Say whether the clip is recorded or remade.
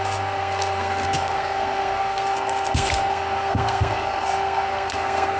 remade